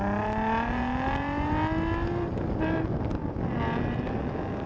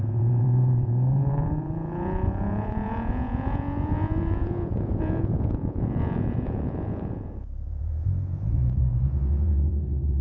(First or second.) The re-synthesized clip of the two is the second